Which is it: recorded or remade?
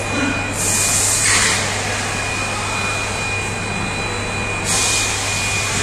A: recorded